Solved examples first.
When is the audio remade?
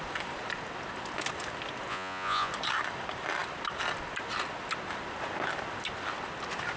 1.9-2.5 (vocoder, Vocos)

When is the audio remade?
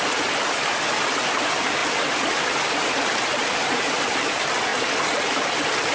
none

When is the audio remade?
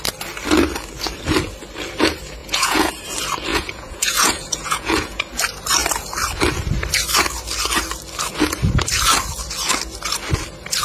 2.4-2.9 (vocoder, Vocos); 3.5-5.2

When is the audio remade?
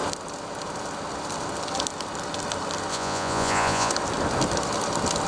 2.9-3.9 (vocoder, Vocos)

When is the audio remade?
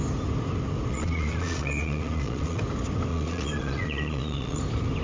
0.9-2.6 (vocoder, Vocos); 3.1-4.6